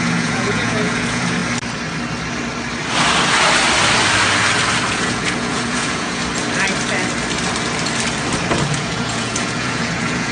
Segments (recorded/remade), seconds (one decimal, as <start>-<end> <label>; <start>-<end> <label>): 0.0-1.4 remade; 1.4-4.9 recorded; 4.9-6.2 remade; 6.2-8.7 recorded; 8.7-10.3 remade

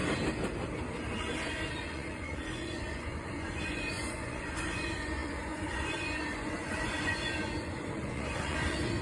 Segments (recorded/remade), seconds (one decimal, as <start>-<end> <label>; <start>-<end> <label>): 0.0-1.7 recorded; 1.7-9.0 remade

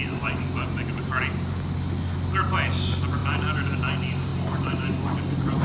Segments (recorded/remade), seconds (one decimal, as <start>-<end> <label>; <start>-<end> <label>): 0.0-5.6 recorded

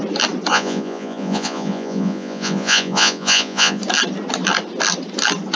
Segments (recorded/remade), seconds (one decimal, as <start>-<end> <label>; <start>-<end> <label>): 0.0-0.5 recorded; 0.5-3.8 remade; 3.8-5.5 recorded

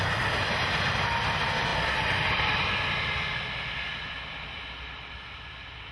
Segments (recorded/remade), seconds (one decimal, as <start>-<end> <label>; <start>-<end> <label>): 0.0-5.9 recorded